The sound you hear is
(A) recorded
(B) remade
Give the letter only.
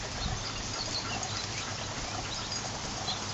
A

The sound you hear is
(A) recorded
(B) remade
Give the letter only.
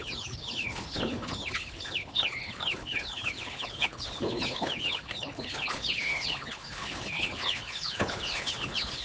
B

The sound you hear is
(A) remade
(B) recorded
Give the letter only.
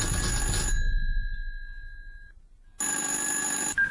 B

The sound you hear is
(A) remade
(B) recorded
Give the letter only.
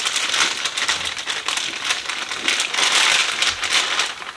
B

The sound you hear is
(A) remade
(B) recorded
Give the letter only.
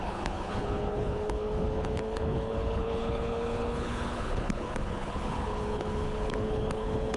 A